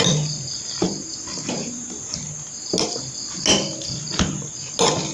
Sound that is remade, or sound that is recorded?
recorded